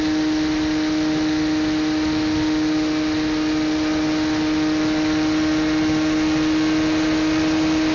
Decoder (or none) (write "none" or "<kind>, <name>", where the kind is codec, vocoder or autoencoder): none